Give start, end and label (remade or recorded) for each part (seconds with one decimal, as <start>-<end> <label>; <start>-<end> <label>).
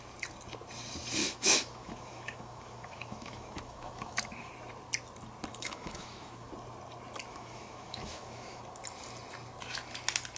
0.0-1.2 recorded; 1.2-4.5 remade; 4.5-5.5 recorded; 5.5-6.5 remade; 6.5-7.3 recorded; 7.3-8.6 remade; 8.6-10.4 recorded